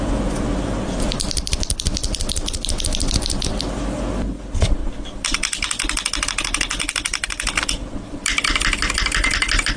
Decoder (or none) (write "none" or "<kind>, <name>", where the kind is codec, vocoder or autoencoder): none